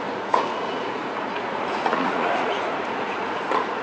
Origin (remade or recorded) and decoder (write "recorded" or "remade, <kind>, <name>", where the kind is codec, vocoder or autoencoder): remade, vocoder, Vocos